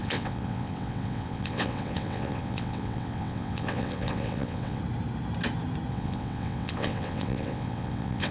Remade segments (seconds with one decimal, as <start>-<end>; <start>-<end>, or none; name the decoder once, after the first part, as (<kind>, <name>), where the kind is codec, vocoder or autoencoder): 0.0-4.8 (vocoder, WaveNeXt); 5.9-8.3